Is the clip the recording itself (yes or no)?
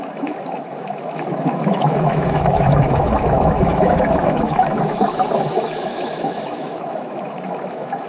no